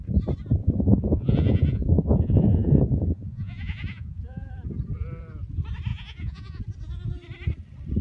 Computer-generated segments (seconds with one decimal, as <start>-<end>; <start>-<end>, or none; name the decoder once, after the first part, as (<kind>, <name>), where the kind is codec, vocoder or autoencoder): 0.6-4.5 (vocoder, Vocos); 5.9-6.6